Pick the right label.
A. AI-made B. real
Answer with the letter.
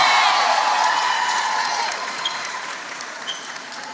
A